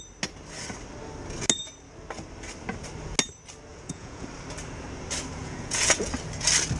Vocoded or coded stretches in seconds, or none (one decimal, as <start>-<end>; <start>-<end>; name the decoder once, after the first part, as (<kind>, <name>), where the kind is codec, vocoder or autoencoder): 3.7-4.3 (vocoder, Vocos); 5.4-6.1